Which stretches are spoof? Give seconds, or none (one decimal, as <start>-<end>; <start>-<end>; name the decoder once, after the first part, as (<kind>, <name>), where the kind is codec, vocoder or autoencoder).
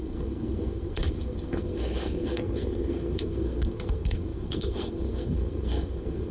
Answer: 0.0-6.3 (codec, SNAC)